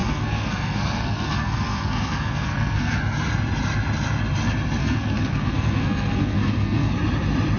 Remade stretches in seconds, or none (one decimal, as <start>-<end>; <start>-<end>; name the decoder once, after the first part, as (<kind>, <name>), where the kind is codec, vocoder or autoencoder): 0.0-3.0 (codec, SNAC); 4.8-6.9